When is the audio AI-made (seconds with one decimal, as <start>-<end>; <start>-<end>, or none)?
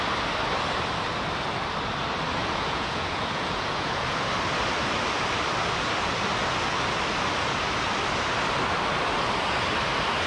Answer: 2.4-4.2